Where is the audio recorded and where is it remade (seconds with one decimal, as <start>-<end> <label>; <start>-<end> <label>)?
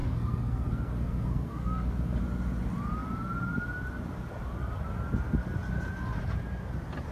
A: 0.0-2.2 remade; 2.2-7.1 recorded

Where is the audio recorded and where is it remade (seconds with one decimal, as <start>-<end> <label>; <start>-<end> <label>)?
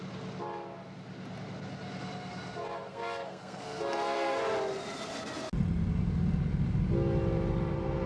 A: 0.0-2.9 recorded; 2.9-4.4 remade; 4.4-8.1 recorded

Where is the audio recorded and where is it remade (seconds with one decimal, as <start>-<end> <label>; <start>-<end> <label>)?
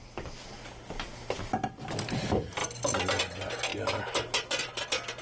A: 0.0-5.2 recorded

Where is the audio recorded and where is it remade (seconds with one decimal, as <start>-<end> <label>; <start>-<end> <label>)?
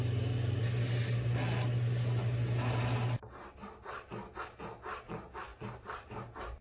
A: 0.0-5.5 recorded; 5.5-6.6 remade